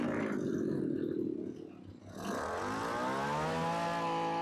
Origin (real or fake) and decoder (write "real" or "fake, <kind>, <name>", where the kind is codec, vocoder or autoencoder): real